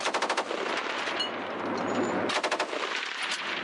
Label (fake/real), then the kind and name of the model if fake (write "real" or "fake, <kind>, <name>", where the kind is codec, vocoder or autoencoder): real